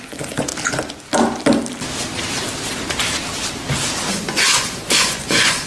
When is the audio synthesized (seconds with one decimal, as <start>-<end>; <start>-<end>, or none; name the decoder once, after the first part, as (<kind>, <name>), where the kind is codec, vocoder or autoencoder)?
0.0-0.5 (vocoder, Vocos); 3.9-5.7